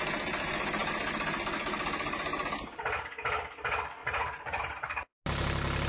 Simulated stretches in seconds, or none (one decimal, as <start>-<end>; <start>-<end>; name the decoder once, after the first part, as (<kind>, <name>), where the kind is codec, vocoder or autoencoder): 4.0-4.6 (vocoder, Vocos)